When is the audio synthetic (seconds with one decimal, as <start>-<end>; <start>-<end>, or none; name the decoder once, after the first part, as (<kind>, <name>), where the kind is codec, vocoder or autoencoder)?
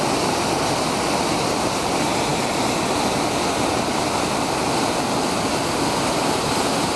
none